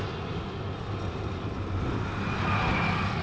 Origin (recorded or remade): recorded